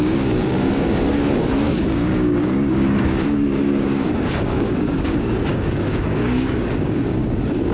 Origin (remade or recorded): remade